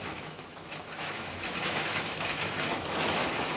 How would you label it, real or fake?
fake